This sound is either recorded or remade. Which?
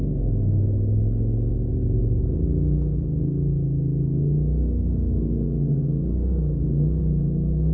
remade